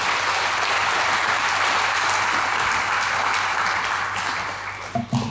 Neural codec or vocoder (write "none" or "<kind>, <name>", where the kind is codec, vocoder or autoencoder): none